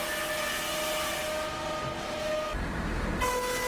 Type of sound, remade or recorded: recorded